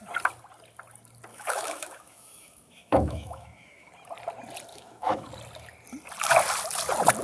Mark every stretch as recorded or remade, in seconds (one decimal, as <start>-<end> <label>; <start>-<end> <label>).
0.0-1.3 recorded; 1.3-3.9 remade; 3.9-4.7 recorded; 4.7-5.3 remade; 5.3-7.2 recorded

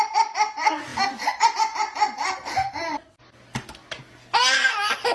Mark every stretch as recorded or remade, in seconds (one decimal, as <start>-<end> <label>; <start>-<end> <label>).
0.0-5.1 recorded

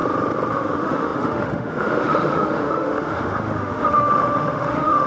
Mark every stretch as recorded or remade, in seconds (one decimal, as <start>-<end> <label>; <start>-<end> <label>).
0.0-0.5 recorded; 0.5-5.1 remade

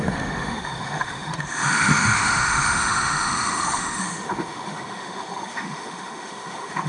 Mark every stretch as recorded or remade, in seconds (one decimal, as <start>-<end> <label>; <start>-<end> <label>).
0.0-6.9 remade

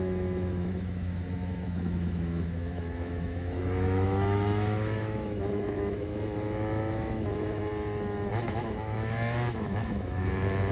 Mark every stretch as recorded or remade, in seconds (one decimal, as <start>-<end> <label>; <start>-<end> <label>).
0.0-7.7 remade; 7.7-8.3 recorded; 8.3-10.7 remade

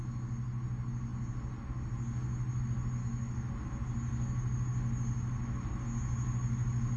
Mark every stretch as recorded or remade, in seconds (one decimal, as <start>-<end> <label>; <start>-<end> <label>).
0.0-3.0 recorded; 3.0-3.5 remade; 3.5-7.0 recorded

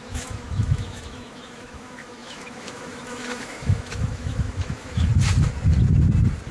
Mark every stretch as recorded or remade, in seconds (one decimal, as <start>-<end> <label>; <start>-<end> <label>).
0.0-5.1 remade; 5.1-6.5 recorded

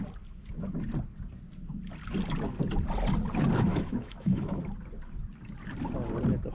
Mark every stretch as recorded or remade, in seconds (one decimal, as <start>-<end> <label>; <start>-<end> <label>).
0.0-3.7 recorded; 3.7-4.6 remade; 4.6-6.5 recorded